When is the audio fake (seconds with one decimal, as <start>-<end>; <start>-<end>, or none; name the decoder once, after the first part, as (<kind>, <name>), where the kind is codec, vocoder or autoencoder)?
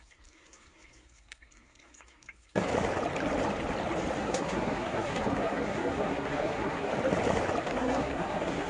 0.0-2.7 (codec, SNAC); 4.2-6.9; 7.6-8.7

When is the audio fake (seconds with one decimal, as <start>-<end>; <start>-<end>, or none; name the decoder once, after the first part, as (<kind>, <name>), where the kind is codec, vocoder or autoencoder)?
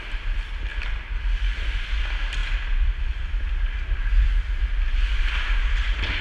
none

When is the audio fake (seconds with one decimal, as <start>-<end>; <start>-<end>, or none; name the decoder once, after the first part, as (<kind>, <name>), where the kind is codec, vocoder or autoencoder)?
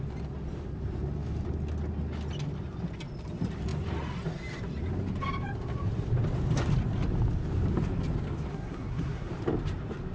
8.5-9.3 (codec, SNAC)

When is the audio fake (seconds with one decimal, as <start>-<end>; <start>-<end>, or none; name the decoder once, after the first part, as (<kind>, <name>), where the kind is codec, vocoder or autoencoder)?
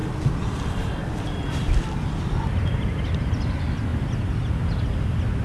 none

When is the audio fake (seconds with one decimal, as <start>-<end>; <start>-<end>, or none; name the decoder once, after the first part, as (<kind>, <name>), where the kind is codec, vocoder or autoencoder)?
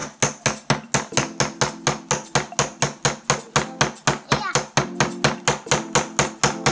none